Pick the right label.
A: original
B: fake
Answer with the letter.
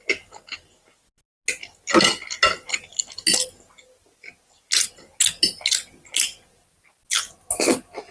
A